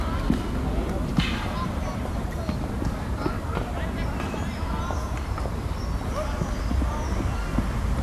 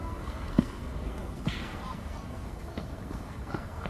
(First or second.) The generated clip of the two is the second